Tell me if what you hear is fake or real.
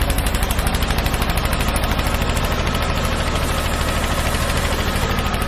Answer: real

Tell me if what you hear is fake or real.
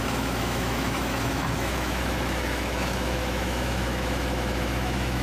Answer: fake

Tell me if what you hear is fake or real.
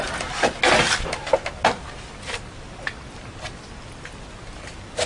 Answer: real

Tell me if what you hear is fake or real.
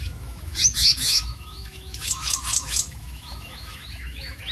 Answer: fake